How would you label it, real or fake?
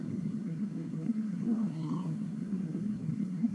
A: fake